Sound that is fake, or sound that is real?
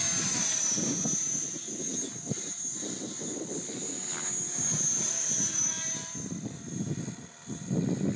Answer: real